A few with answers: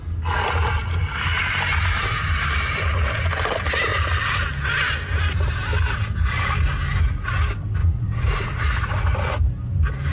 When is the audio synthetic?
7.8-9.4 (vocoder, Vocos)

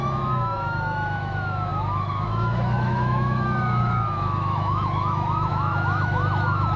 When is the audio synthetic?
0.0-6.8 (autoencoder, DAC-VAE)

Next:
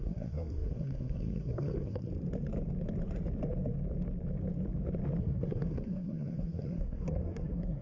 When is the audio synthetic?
0.0-2.1 (codec, SNAC); 5.2-7.8